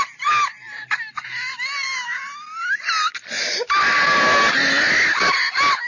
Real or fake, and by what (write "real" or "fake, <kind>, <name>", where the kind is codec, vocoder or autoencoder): real